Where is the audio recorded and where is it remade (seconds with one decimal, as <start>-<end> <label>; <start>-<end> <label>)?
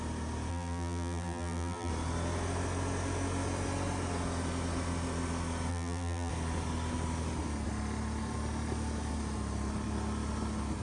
0.0-0.5 recorded; 0.5-1.9 remade; 1.9-5.7 recorded; 5.7-6.3 remade; 6.3-10.8 recorded